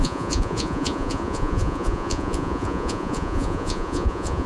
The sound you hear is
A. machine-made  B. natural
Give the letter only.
A